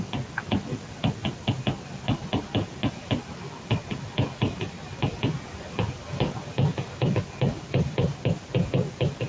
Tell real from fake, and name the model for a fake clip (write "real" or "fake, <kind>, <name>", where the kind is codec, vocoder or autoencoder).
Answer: real